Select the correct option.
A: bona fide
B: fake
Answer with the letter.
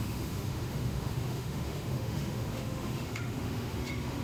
B